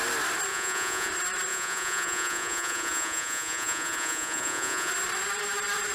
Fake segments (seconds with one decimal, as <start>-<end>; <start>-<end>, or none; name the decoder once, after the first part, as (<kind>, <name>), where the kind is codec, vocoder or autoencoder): 0.5-1.1 (vocoder, Vocos); 1.5-4.9